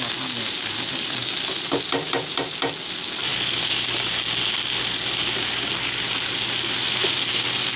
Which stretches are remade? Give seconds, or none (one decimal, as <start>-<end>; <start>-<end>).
none